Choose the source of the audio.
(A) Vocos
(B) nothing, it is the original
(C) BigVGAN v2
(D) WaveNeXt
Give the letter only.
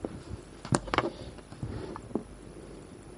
B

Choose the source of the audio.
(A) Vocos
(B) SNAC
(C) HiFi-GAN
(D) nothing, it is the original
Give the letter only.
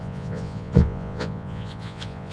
A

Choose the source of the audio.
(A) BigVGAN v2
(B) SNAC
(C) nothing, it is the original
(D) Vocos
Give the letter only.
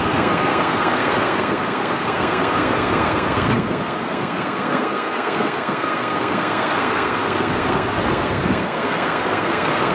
B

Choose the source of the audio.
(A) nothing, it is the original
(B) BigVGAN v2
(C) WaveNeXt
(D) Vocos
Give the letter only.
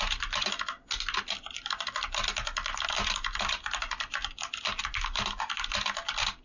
A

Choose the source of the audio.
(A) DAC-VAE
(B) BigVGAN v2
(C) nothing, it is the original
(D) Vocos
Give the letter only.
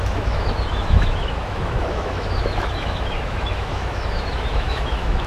A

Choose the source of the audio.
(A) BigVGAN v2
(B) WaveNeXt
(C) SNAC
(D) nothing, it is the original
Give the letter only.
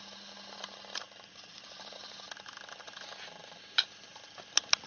D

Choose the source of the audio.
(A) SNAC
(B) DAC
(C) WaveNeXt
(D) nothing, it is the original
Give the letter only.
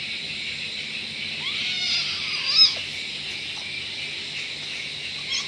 D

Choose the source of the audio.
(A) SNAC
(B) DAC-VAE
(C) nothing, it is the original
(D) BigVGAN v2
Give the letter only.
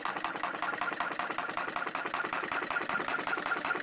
C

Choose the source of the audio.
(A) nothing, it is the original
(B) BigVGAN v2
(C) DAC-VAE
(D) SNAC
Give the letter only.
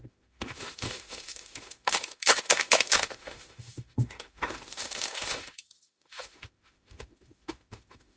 C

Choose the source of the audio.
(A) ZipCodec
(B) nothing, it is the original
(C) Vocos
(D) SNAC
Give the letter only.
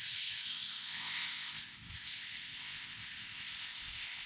A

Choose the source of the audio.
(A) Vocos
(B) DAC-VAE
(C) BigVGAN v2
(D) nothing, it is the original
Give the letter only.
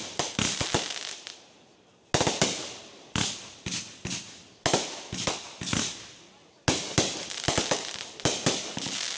D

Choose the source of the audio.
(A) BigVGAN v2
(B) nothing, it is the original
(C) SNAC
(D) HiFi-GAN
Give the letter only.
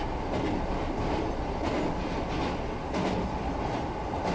B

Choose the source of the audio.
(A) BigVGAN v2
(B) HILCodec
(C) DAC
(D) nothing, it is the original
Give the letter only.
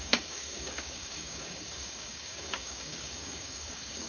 C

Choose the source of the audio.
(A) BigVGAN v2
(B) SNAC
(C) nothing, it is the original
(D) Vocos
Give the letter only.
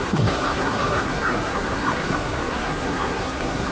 B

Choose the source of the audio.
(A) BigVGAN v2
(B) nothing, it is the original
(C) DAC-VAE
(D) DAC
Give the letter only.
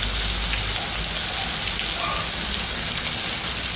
B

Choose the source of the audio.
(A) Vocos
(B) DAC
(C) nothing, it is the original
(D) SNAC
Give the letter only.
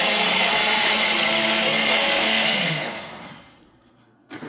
D